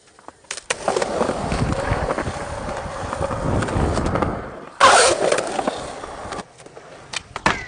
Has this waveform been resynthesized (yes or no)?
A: no